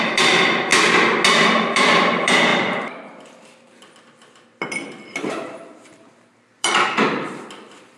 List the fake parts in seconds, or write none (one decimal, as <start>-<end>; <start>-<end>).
0.0-0.7; 1.4-8.0